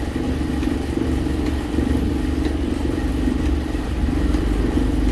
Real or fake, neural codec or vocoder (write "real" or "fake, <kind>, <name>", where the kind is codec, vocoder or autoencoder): fake, vocoder, BigVGAN v2